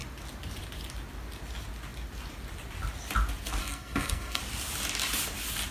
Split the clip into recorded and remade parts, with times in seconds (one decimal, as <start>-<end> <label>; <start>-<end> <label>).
0.0-3.6 recorded; 3.6-4.4 remade; 4.4-5.7 recorded